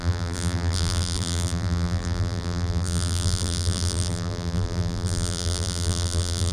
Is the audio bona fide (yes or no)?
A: no